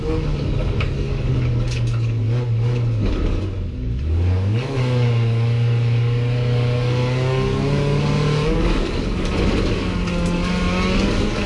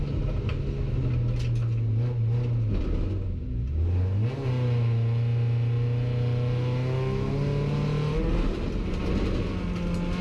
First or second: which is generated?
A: first